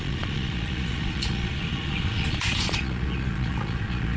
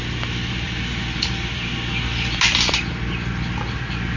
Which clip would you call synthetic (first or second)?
first